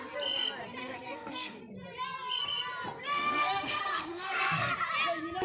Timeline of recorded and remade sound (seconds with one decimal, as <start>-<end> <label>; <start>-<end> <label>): 0.0-0.8 recorded; 0.8-1.6 remade; 1.6-3.0 recorded; 3.0-4.7 remade; 4.7-5.4 recorded